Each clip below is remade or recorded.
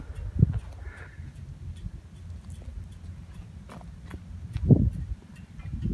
recorded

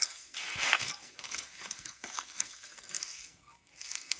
remade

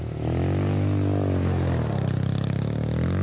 recorded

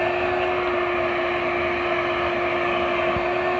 recorded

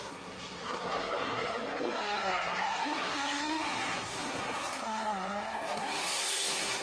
remade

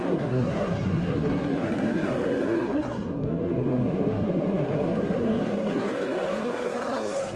remade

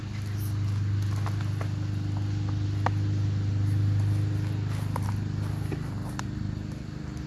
recorded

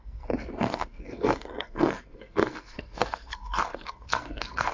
remade